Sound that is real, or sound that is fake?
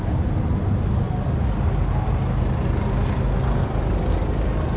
real